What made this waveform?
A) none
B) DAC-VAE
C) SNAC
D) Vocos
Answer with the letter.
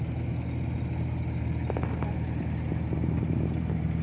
A